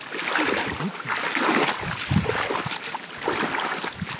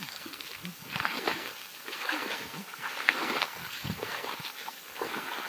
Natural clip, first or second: first